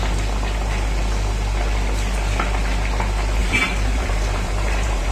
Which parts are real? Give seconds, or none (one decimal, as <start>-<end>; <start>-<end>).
0.0-3.4